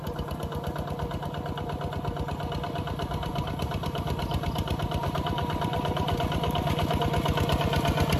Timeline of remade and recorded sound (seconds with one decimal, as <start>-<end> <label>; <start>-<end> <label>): 0.0-3.3 recorded; 3.3-7.0 remade; 7.0-8.2 recorded